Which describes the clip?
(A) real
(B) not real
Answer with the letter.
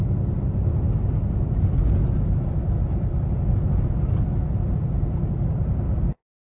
A